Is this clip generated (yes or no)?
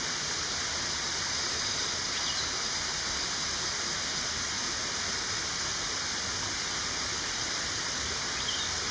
no